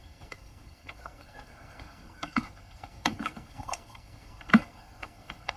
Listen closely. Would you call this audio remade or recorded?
remade